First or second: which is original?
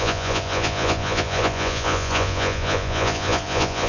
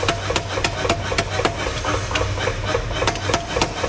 second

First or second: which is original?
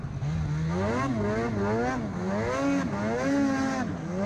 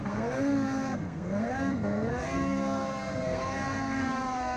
first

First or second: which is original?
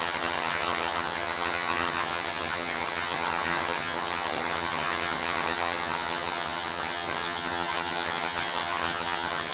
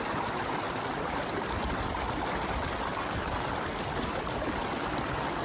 second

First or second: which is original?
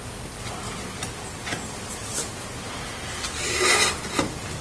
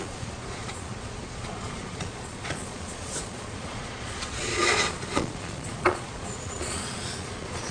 first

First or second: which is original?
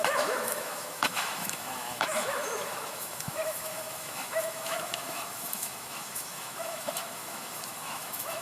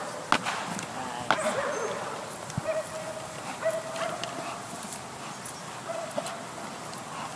second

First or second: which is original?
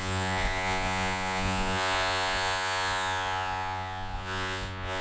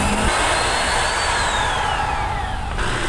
second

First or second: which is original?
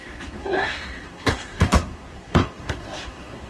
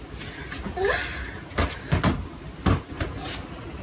second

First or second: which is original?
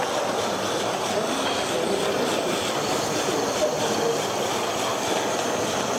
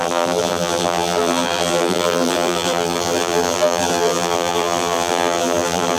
first